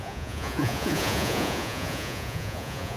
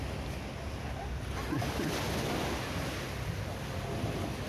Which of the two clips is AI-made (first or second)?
first